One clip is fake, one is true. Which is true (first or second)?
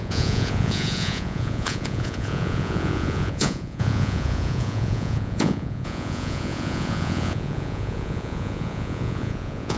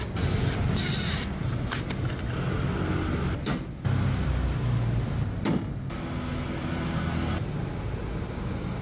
second